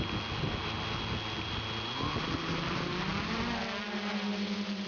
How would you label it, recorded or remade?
recorded